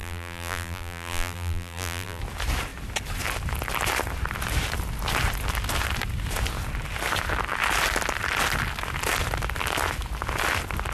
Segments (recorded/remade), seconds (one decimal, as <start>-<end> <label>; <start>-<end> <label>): 0.0-2.2 remade; 2.2-10.9 recorded